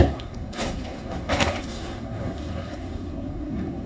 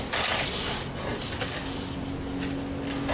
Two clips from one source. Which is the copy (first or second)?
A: first